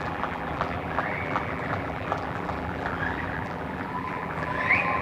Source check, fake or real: fake